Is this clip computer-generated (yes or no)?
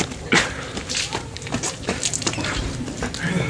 no